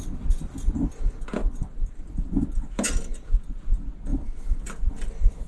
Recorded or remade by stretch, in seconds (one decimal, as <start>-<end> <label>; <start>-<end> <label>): 0.0-4.1 recorded; 4.1-4.6 remade; 4.6-5.5 recorded